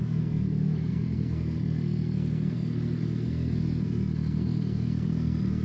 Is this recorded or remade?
remade